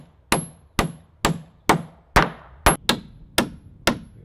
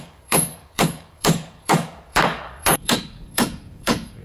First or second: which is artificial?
second